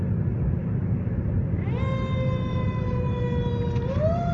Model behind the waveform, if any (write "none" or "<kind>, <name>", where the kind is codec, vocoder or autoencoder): none